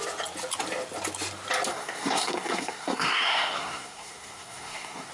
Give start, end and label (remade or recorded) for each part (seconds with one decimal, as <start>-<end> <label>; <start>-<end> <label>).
0.0-1.7 recorded; 1.7-5.1 remade